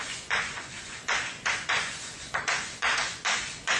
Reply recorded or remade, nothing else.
remade